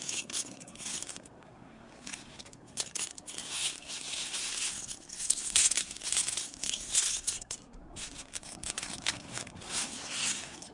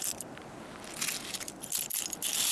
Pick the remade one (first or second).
first